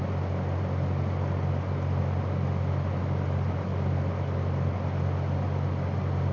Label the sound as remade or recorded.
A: recorded